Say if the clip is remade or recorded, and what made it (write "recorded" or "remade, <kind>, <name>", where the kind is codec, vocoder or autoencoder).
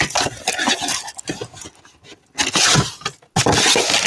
recorded